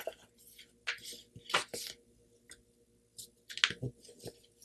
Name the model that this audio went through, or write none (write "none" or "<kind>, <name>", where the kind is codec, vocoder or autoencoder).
none